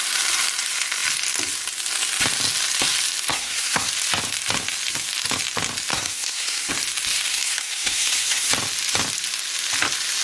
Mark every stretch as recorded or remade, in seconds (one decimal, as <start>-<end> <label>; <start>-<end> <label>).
0.0-3.3 recorded; 3.3-3.9 remade; 3.9-5.9 recorded; 5.9-6.7 remade; 6.7-7.3 recorded; 7.3-8.5 remade; 8.5-10.2 recorded